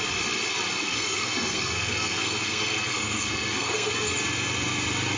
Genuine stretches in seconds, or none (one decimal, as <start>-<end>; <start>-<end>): 0.0-0.8; 3.9-5.2